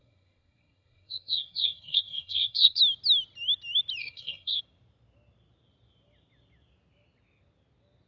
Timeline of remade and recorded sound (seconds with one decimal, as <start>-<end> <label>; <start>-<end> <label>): 0.0-2.8 remade; 2.8-4.0 recorded; 4.0-4.6 remade; 4.6-8.1 recorded